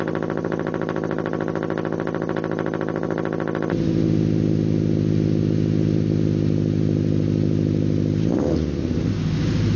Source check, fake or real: real